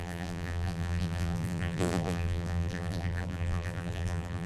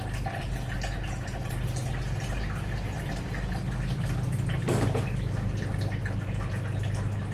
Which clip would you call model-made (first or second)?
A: first